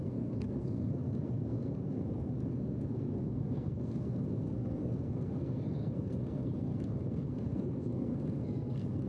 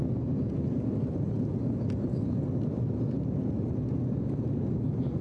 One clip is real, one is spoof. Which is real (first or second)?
second